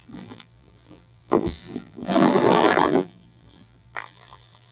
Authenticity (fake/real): fake